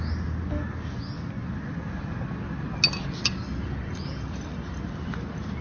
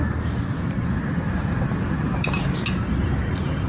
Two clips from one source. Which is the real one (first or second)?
first